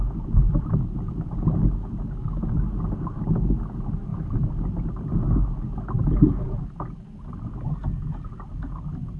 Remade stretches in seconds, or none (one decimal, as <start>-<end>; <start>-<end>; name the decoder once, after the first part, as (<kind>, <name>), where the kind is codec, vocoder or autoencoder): none

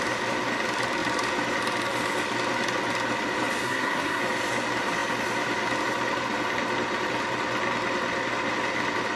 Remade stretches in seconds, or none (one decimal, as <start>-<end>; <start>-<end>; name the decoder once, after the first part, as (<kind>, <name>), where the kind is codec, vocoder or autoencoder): 3.6-4.2 (codec, SNAC)

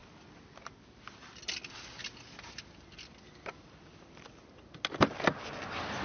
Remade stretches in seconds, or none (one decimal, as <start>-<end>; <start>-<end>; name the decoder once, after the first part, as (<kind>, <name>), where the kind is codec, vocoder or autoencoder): none

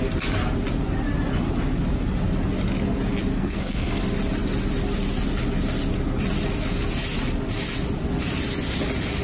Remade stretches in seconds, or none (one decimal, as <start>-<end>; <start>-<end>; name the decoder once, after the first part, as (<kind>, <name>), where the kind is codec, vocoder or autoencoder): 3.3-4.0 (codec, SNAC)

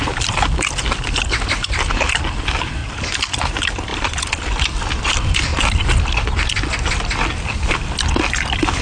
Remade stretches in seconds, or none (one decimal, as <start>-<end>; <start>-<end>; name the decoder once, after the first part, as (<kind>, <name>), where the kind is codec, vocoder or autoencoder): 0.0-2.8 (vocoder, BigVGAN v2); 3.3-5.5; 8.3-8.8

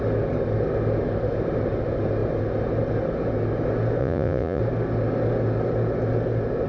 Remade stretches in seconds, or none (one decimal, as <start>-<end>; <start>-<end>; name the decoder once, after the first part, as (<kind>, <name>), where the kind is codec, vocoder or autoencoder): 4.0-4.6 (vocoder, Vocos)